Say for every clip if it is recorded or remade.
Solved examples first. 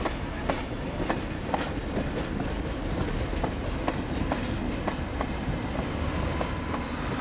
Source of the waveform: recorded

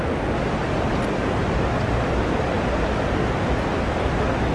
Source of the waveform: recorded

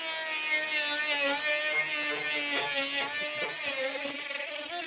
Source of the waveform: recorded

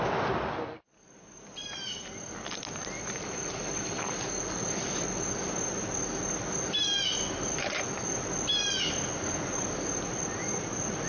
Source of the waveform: recorded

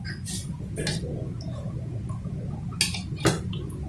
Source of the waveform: recorded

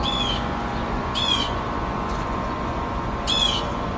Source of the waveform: remade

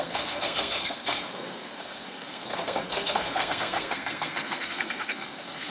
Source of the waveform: remade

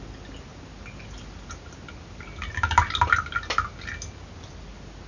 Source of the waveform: recorded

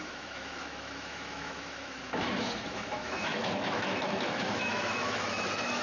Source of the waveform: remade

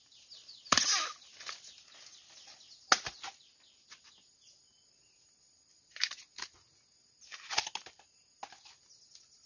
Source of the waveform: recorded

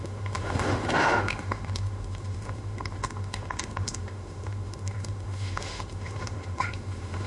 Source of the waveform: remade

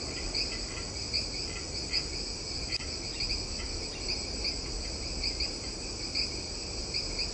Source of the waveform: recorded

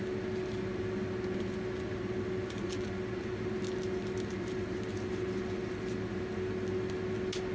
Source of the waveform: recorded